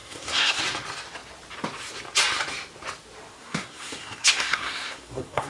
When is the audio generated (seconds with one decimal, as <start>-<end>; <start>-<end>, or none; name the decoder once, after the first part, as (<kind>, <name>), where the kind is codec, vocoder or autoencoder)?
0.0-0.6 (codec, SNAC); 3.3-5.5